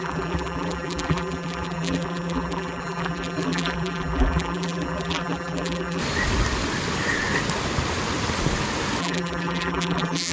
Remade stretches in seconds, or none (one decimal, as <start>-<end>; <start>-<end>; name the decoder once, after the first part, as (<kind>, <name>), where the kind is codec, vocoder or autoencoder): 0.0-6.0 (vocoder, BigVGAN v2); 9.0-10.3